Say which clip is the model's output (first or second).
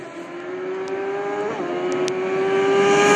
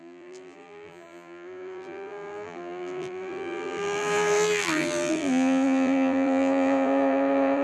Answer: second